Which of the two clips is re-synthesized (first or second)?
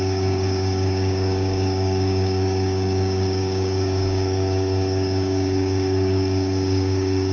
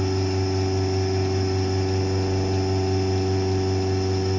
first